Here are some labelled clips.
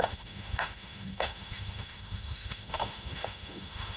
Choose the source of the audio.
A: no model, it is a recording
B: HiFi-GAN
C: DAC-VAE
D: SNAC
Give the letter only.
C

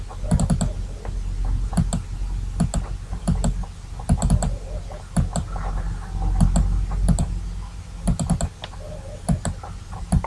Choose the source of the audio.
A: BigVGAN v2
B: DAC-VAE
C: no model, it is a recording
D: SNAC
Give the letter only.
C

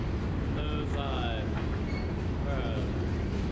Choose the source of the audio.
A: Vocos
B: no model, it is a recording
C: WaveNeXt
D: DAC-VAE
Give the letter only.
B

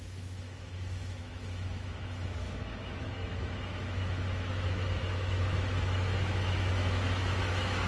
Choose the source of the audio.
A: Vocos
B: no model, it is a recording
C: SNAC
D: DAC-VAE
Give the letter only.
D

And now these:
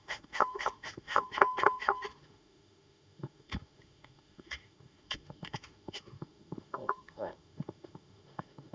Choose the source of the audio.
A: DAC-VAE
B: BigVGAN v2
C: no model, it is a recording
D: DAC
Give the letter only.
A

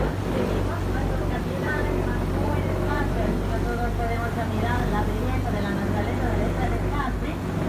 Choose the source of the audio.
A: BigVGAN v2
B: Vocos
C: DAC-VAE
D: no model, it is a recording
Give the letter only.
D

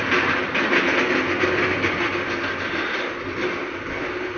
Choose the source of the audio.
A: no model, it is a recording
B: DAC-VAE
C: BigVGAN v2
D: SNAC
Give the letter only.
A